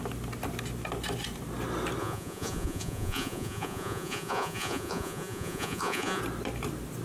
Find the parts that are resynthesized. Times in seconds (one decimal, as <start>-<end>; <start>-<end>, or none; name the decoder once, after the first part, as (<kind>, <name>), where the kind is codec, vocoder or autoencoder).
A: 2.0-6.2 (vocoder, Vocos)